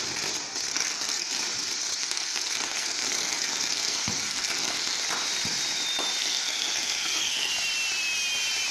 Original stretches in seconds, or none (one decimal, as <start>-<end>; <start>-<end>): 0.0-0.7; 1.4-2.0; 5.0-6.2; 7.5-8.7